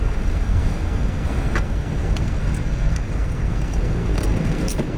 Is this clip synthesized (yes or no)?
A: yes